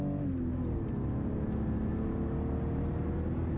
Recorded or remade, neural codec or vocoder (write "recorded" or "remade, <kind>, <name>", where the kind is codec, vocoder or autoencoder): recorded